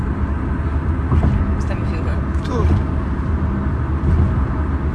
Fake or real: real